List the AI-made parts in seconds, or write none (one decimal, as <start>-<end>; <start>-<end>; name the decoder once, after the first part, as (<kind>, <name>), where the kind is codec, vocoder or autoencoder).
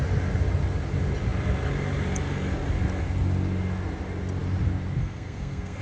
5.0-5.8 (codec, SNAC)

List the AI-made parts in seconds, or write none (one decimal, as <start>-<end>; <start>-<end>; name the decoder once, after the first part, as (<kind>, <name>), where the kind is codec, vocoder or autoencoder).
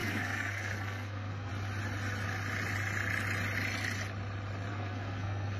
0.0-1.5 (codec, SNAC); 4.7-5.6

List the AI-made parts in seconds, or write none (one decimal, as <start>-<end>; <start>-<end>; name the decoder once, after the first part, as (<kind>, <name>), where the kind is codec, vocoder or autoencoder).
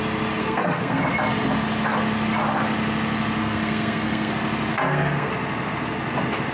0.4-1.0 (codec, SNAC); 3.4-4.3; 4.7-5.3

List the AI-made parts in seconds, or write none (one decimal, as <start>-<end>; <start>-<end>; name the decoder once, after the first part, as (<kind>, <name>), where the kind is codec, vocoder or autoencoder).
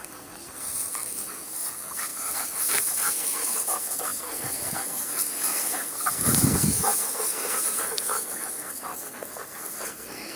0.0-10.4 (codec, SNAC)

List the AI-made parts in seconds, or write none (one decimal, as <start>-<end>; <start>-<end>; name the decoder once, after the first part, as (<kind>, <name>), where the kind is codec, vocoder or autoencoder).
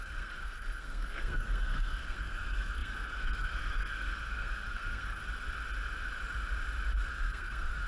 0.0-5.2 (codec, SNAC); 7.1-7.9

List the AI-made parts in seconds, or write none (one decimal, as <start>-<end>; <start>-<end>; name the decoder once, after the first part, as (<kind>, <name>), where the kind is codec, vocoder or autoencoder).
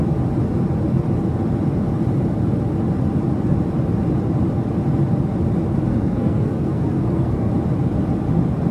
5.9-7.5 (codec, SNAC)